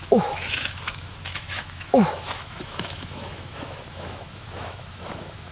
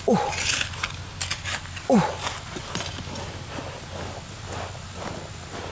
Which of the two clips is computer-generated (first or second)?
first